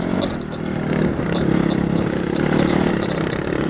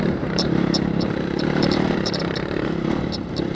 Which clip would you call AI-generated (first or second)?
second